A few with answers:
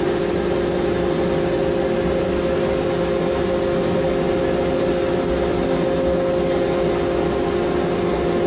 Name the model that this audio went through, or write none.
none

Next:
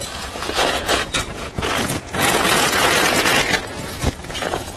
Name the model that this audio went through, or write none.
vocoder, Vocos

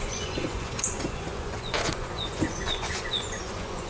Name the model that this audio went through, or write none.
vocoder, Vocos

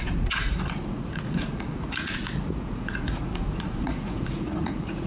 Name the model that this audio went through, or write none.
vocoder, Vocos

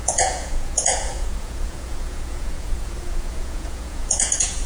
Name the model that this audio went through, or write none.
vocoder, Vocos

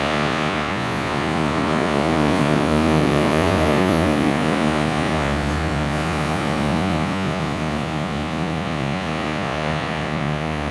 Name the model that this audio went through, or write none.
vocoder, Vocos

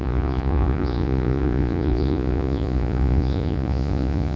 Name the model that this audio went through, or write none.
vocoder, Vocos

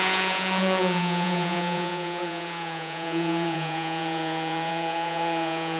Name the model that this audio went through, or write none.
vocoder, Vocos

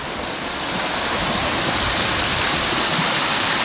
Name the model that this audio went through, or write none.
none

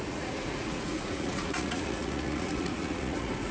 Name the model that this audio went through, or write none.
vocoder, Vocos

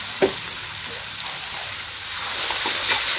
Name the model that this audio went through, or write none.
none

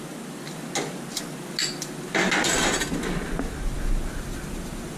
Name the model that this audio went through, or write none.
none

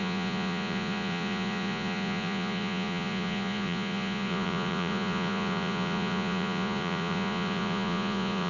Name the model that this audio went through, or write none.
vocoder, Vocos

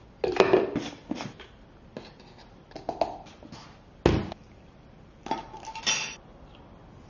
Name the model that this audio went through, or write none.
none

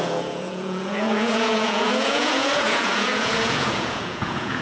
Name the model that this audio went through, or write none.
vocoder, Vocos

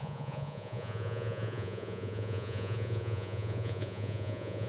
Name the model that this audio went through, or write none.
vocoder, Vocos